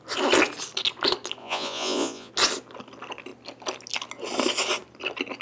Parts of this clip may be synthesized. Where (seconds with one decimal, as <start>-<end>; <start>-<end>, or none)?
1.4-2.3